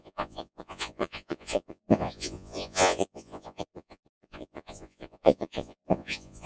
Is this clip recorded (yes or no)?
no